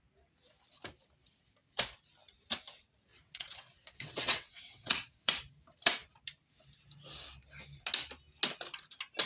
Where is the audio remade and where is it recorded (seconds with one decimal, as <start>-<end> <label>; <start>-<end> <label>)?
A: 0.0-3.1 recorded; 3.1-5.3 remade; 5.3-9.3 recorded